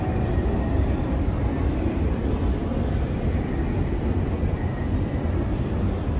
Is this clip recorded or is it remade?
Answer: recorded